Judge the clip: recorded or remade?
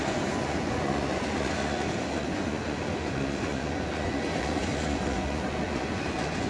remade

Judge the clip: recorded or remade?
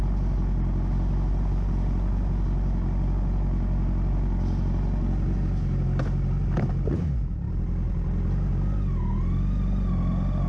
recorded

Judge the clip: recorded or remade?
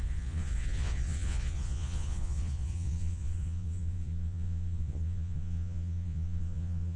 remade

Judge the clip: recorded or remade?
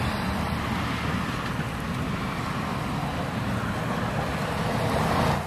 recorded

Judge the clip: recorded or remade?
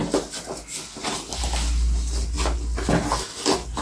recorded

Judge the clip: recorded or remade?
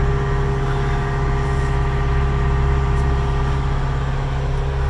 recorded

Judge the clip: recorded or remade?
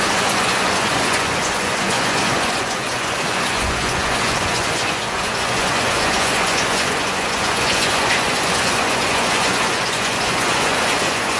remade